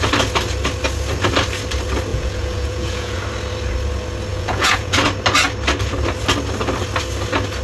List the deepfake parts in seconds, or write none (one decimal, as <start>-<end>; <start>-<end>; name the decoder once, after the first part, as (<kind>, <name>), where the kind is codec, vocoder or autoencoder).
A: 2.1-3.2 (vocoder, Vocos); 4.3-4.9